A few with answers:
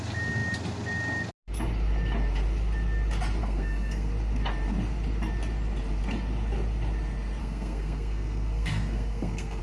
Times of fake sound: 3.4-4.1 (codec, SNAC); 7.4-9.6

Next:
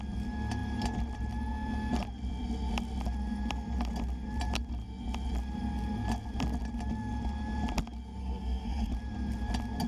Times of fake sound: 8.2-8.9 (codec, SNAC)

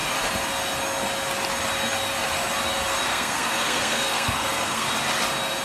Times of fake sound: 3.1-4.9 (codec, SNAC)